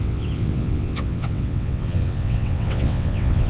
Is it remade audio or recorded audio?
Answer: remade